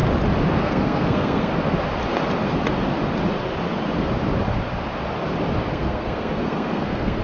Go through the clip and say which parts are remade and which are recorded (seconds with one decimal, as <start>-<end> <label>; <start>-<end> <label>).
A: 0.0-0.6 recorded; 0.6-1.5 remade; 1.5-5.7 recorded; 5.7-7.2 remade